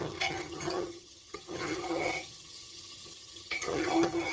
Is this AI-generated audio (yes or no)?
yes